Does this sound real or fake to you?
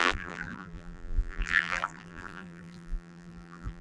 fake